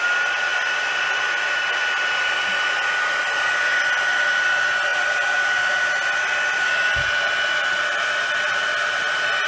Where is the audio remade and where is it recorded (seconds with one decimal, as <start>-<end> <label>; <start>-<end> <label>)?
0.0-4.9 recorded; 4.9-5.4 remade; 5.4-9.5 recorded